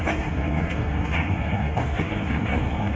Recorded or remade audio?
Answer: remade